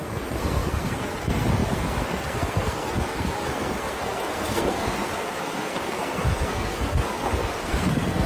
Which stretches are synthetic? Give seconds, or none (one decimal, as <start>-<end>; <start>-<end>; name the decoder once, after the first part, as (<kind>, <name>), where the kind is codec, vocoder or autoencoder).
0.0-8.3 (codec, SNAC)